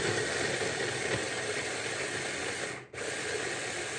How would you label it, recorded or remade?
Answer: recorded